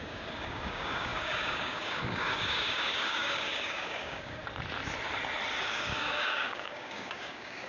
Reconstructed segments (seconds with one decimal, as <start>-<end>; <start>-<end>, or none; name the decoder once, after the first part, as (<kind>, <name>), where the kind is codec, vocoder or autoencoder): 0.0-4.4 (codec, DAC); 5.7-7.7